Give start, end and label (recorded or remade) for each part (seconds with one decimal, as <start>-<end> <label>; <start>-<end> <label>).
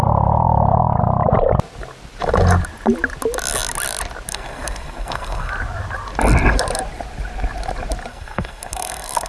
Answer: 0.0-4.3 recorded; 4.3-5.5 remade; 5.5-8.1 recorded; 8.1-9.3 remade